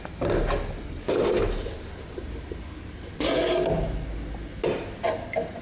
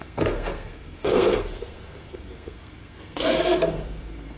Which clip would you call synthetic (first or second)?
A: second